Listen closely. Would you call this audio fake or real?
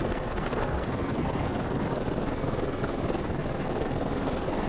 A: fake